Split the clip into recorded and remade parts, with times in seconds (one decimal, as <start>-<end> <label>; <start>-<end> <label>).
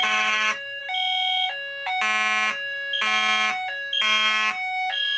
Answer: 0.0-0.8 remade; 0.8-5.2 recorded